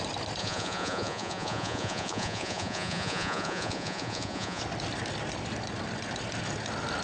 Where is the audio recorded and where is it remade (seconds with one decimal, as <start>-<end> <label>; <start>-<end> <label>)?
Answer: 0.0-0.4 recorded; 0.4-4.6 remade; 4.6-7.0 recorded